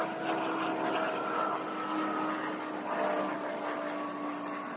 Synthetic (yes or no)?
no